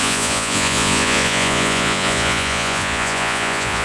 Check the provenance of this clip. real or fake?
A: fake